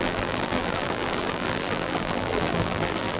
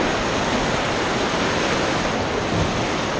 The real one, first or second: second